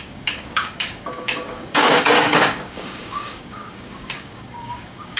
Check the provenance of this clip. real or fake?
fake